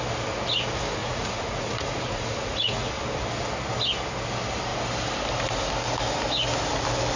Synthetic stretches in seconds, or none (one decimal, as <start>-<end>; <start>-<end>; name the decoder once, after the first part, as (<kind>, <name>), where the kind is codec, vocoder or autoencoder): 1.0-2.9 (vocoder, Vocos)